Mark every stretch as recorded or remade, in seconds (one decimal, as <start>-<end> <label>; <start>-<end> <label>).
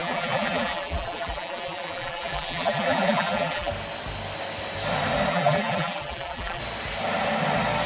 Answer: 0.0-3.7 remade; 3.7-5.3 recorded; 5.3-6.6 remade; 6.6-7.9 recorded